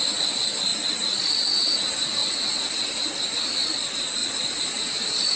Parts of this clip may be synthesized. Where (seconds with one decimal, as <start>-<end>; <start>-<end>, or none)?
4.2-4.8